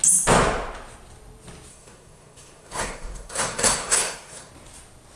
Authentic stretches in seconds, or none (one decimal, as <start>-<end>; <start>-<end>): 0.0-1.7; 4.5-5.2